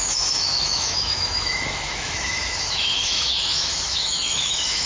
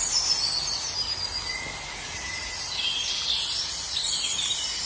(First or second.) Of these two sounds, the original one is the second